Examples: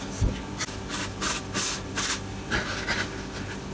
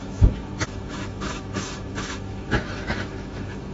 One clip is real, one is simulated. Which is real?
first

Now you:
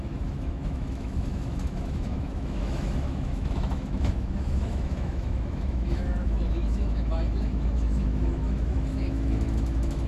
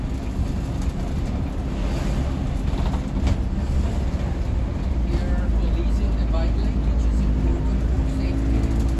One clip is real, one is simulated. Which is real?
second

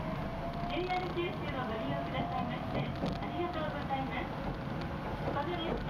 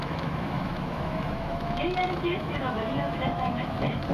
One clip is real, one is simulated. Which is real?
first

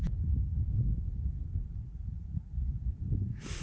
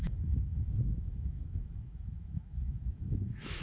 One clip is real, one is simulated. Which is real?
first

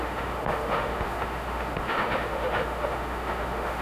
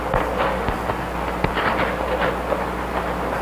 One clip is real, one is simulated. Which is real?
second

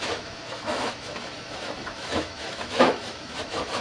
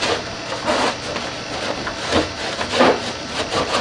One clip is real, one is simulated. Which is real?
second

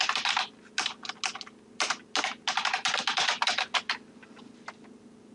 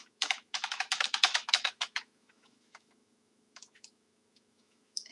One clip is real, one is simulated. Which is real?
first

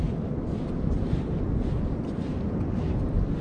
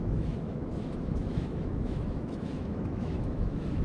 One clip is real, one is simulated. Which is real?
first